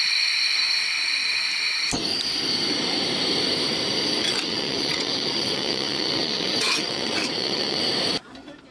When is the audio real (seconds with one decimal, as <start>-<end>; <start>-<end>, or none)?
0.0-4.2; 7.8-8.7